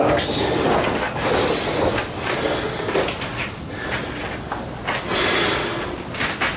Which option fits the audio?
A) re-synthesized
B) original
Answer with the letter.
B